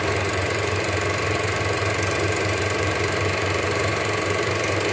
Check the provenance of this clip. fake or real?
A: fake